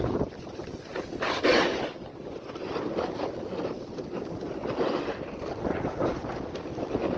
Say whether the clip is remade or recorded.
recorded